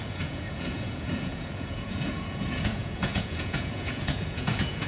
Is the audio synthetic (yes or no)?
yes